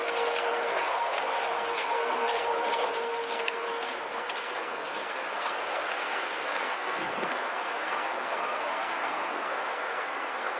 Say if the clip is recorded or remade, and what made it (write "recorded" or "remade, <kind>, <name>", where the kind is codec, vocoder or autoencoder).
remade, codec, SNAC